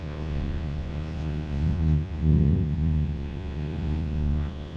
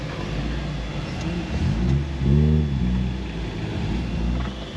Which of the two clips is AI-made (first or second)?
first